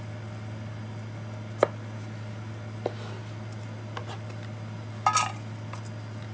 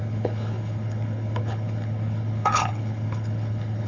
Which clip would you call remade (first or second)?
second